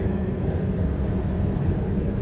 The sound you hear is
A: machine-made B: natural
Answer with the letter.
A